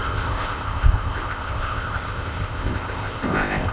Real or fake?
fake